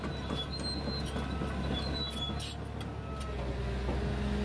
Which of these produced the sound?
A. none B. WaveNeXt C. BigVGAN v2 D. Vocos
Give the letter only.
A